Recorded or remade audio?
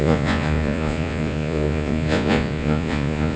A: remade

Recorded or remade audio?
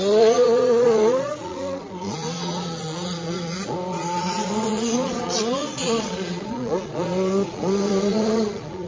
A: remade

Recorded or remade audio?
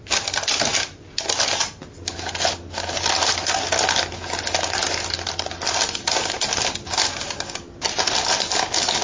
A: recorded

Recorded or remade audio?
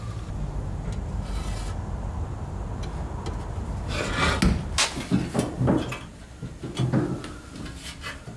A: recorded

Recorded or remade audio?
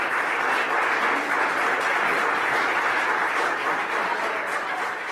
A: recorded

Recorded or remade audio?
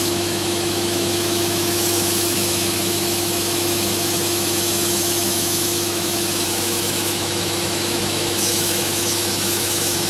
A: remade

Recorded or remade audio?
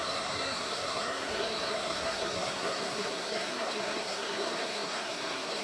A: remade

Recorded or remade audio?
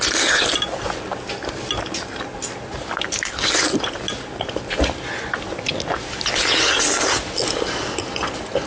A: recorded